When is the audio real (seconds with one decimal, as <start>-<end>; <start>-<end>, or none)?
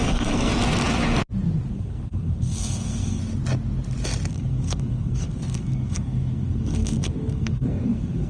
0.5-1.7; 3.2-4.3